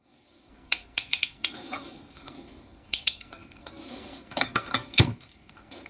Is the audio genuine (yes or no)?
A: no